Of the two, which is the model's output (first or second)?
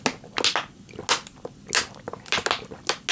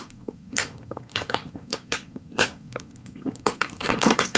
second